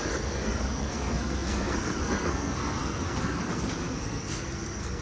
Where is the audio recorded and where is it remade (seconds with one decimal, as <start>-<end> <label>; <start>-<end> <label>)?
0.0-5.0 remade